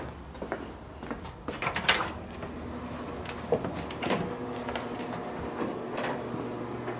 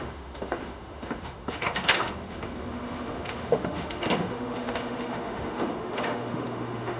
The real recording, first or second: first